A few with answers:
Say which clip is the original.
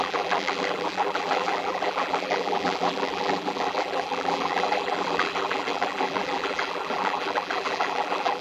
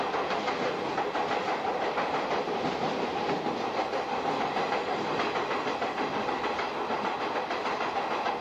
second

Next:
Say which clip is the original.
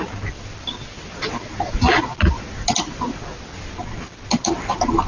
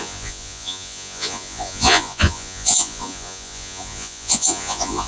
first